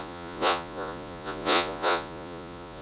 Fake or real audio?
fake